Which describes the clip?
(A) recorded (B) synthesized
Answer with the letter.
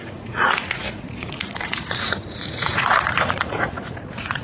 B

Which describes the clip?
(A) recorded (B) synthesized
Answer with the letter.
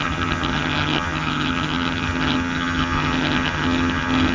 B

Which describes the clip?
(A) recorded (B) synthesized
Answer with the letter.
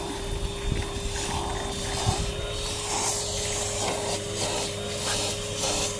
A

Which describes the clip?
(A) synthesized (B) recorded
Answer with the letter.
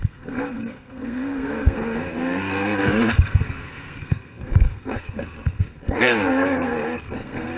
A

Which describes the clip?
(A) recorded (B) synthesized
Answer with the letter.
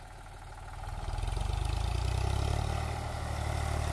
A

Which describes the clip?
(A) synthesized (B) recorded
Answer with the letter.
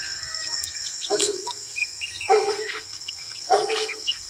A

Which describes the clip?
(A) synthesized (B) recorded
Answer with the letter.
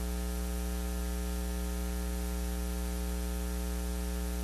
B